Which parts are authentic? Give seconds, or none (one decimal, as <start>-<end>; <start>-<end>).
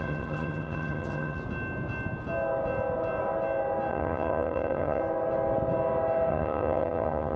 1.4-3.9; 5.0-6.3